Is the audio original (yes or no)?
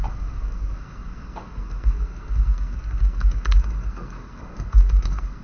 no